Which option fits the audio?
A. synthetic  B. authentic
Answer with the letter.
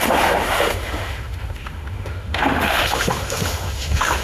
A